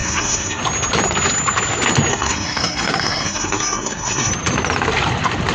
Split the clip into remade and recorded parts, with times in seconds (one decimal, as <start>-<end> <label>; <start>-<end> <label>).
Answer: 0.0-0.6 remade; 0.6-2.1 recorded; 2.1-4.3 remade; 4.3-5.5 recorded